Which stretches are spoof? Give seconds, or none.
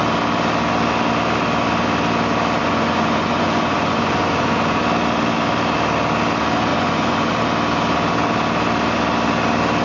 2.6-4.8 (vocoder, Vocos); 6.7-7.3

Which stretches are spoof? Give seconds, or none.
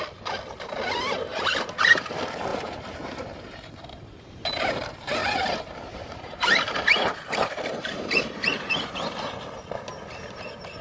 1.3-2.1 (vocoder, BigVGAN v2); 2.5-4.3; 5.2-9.1